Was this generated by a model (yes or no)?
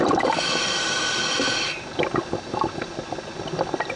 no